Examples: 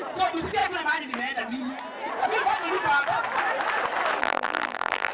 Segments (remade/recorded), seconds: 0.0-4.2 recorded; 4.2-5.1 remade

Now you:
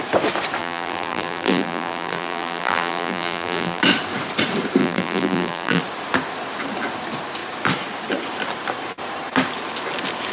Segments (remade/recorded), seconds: 0.0-0.6 recorded; 0.6-3.8 remade; 3.8-4.8 recorded; 4.8-5.8 remade; 5.8-10.3 recorded